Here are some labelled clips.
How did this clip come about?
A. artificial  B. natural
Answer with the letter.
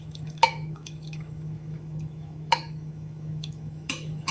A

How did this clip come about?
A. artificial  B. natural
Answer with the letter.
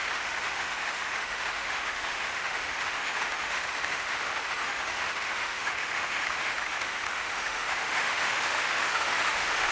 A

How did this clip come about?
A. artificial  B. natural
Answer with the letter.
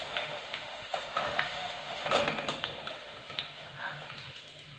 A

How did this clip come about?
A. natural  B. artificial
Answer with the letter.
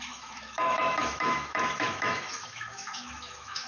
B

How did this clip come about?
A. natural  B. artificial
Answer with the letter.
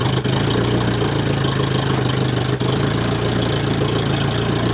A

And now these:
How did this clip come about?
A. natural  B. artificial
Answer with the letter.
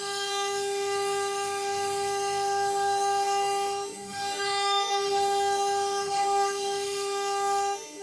B